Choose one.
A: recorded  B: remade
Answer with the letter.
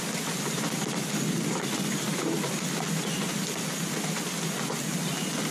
A